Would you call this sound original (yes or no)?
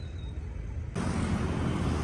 yes